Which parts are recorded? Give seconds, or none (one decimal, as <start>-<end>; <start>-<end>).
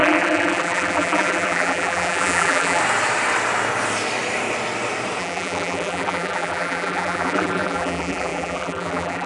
2.8-5.2